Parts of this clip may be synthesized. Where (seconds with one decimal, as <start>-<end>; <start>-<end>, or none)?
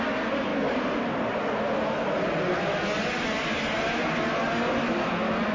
none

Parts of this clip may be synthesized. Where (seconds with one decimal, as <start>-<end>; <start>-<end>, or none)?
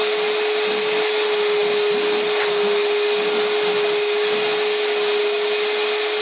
none